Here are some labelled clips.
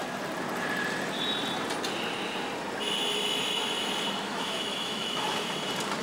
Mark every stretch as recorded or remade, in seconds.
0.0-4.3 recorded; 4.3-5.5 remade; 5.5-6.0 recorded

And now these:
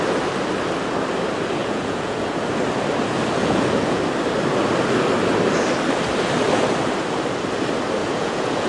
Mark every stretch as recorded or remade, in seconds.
0.0-1.6 recorded; 1.6-2.4 remade; 2.4-3.4 recorded; 3.4-4.0 remade; 4.0-8.0 recorded; 8.0-8.7 remade

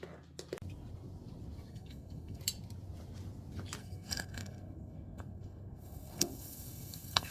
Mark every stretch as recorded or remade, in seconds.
0.0-1.7 recorded; 1.7-2.4 remade; 2.4-3.8 recorded; 3.8-7.3 remade